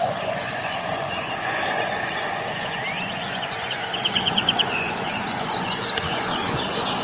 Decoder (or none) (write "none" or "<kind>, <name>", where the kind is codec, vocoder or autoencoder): vocoder, Vocos